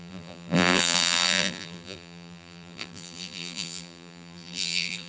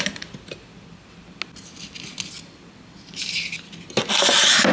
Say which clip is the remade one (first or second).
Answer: first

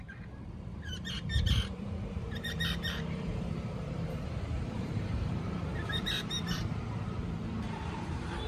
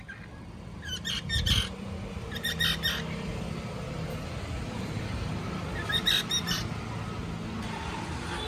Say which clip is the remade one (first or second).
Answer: first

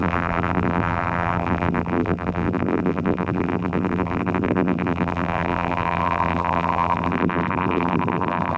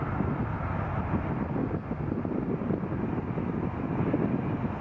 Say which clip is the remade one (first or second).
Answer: first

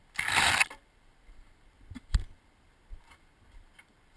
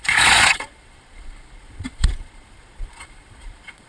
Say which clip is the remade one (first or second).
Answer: second